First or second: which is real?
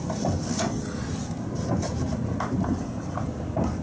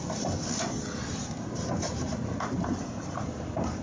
first